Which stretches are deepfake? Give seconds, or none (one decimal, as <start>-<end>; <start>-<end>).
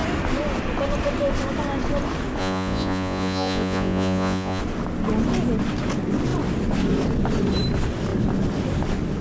2.4-4.6